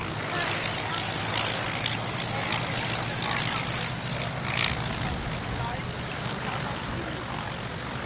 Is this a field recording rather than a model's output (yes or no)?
yes